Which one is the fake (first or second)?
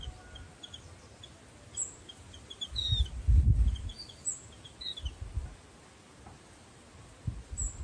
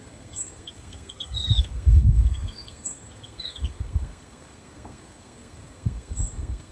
second